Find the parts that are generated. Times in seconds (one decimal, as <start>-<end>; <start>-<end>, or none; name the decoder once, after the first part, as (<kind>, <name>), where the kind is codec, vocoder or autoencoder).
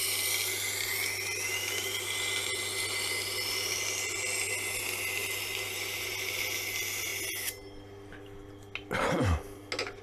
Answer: none